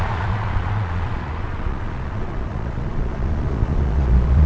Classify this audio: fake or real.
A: fake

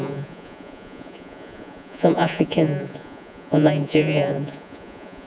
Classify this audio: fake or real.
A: fake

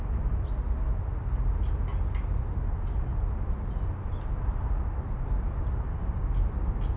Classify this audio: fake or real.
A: real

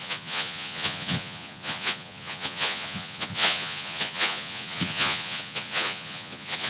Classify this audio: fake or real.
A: fake